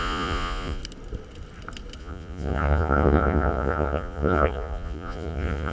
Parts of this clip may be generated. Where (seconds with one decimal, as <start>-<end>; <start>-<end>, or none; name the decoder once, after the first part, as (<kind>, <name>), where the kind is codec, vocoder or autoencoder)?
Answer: 0.0-0.8 (vocoder, Vocos); 2.0-5.7